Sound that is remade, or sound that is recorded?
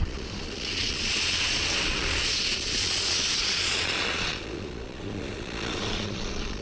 remade